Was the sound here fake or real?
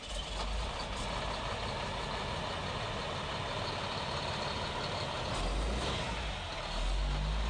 real